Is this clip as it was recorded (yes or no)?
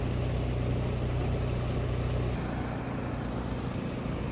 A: yes